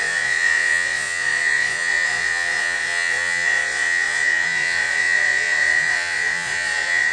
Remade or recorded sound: remade